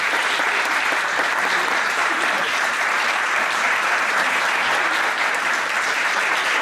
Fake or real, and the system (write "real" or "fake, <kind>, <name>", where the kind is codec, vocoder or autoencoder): fake, vocoder, BigVGAN v2